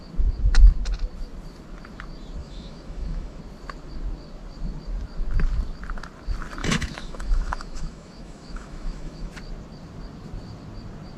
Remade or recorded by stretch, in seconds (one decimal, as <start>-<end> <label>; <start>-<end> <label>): 0.0-2.4 recorded; 2.4-3.4 remade; 3.4-6.6 recorded; 6.6-9.3 remade; 9.3-11.2 recorded